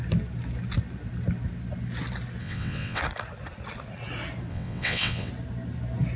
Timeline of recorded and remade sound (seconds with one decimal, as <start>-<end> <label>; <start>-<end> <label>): 0.0-2.4 recorded; 2.4-3.0 remade; 3.0-4.5 recorded; 4.5-5.3 remade; 5.3-6.2 recorded